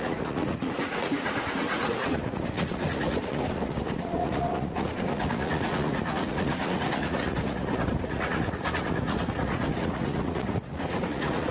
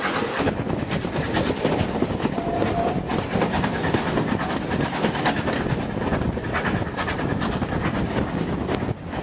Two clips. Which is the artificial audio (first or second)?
first